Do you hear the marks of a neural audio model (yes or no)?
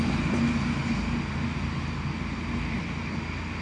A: no